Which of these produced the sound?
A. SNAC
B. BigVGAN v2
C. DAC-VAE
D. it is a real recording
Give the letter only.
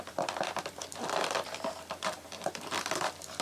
B